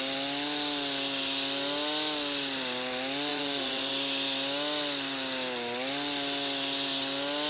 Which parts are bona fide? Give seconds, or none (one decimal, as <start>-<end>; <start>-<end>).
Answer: 0.0-3.3; 3.9-7.5